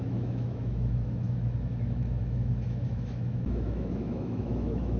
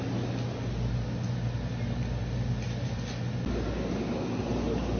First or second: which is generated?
first